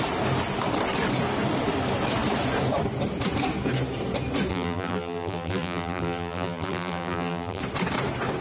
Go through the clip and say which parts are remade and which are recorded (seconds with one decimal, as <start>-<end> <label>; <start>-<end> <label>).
0.0-4.5 recorded; 4.5-7.6 remade; 7.6-8.4 recorded